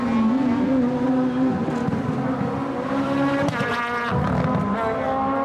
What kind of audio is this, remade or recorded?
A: recorded